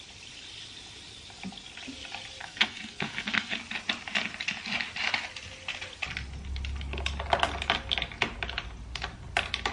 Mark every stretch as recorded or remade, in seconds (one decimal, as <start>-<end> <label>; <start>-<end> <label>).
0.0-2.4 recorded; 2.4-3.6 remade; 3.6-9.7 recorded